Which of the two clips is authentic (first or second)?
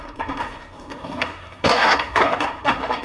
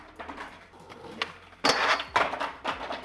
second